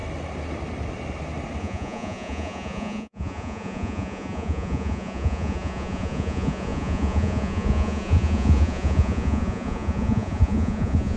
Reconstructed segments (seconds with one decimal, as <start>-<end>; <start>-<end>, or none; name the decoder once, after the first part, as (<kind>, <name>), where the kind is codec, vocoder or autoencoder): 1.6-11.2 (vocoder, Vocos)

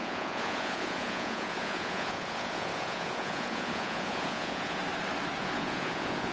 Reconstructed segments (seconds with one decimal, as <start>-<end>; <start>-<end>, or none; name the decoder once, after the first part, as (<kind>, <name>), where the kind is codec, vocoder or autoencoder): 0.0-4.8 (vocoder, Vocos); 5.4-6.3

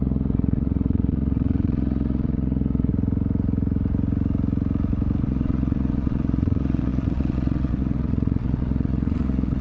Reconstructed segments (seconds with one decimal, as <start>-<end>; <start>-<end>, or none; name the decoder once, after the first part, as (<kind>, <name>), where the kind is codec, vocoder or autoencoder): 0.0-2.9 (vocoder, Vocos); 5.2-9.6

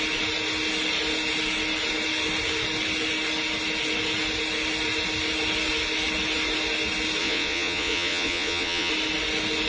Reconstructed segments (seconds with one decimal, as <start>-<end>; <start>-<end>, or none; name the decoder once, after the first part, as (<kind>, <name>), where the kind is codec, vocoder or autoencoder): 7.2-8.9 (vocoder, Vocos)

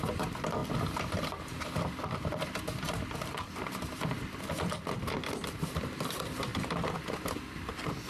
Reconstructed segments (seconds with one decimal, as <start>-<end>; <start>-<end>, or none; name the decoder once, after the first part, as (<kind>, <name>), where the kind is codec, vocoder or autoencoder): none

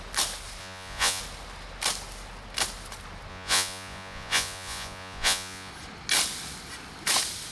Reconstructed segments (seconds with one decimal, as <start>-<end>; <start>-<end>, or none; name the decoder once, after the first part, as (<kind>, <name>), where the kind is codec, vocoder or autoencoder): 0.6-1.2 (vocoder, Vocos); 3.3-5.7

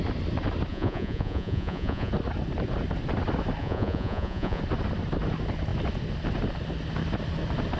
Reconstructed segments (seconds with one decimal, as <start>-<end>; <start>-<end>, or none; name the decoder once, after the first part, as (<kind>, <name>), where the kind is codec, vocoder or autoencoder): 0.7-2.1 (vocoder, Vocos); 3.6-4.6